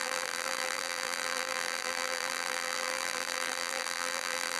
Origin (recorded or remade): remade